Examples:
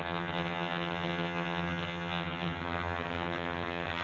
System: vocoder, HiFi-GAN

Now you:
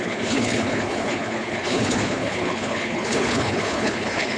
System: codec, HILCodec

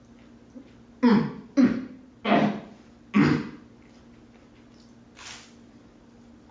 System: none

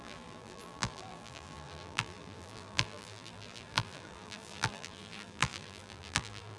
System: vocoder, BigVGAN v2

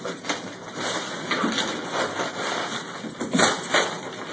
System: none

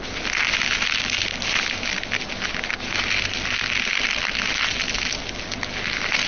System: none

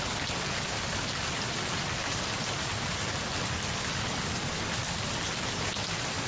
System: none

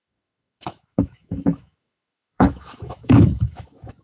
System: autoencoder, DAC-VAE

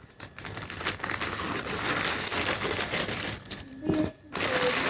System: none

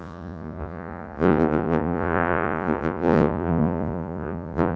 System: vocoder, Vocos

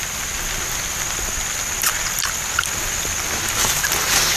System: none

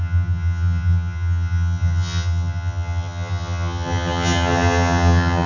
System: vocoder, HiFi-GAN